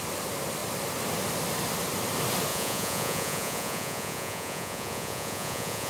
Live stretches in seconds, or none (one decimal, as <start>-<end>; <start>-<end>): 0.0-2.5